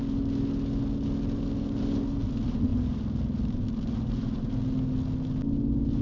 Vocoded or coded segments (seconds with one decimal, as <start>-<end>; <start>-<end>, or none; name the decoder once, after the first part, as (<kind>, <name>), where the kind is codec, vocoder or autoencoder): none

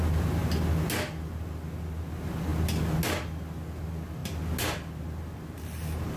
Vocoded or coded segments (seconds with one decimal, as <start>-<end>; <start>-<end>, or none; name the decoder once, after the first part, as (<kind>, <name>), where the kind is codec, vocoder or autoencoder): none